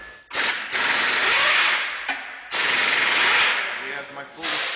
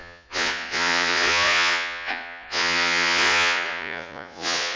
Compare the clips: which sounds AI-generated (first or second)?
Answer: second